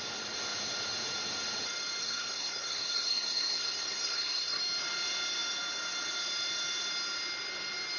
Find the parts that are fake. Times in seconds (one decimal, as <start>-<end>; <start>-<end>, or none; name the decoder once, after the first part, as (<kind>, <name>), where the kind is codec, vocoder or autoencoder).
2.0-4.6 (codec, SNAC)